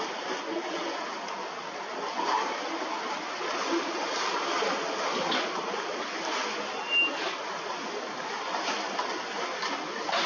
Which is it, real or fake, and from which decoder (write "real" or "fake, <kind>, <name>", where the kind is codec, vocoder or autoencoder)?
real